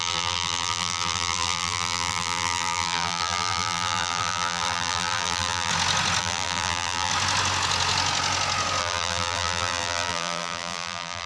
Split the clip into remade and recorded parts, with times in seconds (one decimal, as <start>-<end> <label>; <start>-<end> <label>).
0.0-5.7 remade; 5.7-6.2 recorded; 6.2-7.1 remade; 7.1-8.8 recorded; 8.8-11.3 remade